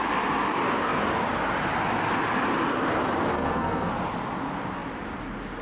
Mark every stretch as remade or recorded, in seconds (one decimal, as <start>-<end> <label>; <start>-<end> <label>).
0.0-3.3 recorded; 3.3-3.9 remade; 3.9-5.6 recorded